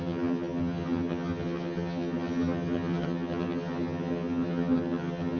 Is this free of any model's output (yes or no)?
no